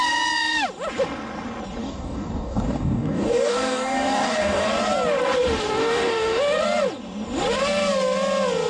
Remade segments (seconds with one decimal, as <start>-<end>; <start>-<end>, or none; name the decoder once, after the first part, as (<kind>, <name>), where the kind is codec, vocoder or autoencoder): 1.8-4.7 (codec, DAC); 5.8-6.4